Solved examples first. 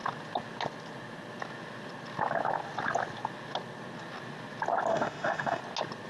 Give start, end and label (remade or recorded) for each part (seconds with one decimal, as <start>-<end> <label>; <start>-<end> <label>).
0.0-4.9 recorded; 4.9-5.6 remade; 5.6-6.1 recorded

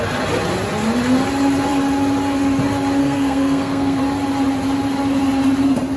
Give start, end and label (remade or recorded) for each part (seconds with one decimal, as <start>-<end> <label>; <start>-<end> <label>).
0.0-3.0 recorded; 3.0-4.0 remade; 4.0-6.0 recorded

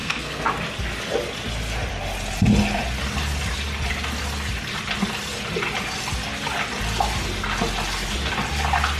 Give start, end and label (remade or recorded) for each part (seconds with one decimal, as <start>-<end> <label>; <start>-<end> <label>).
0.0-0.5 remade; 0.5-9.0 recorded

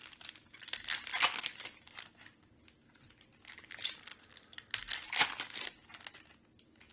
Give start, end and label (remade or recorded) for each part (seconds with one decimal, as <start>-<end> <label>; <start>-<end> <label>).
0.0-0.6 remade; 0.6-1.5 recorded; 1.5-2.4 remade; 2.4-6.9 recorded